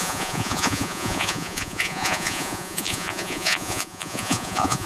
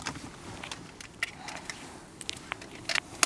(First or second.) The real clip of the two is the second